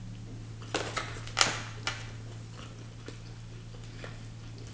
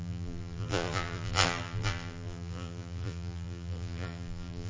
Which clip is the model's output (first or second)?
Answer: second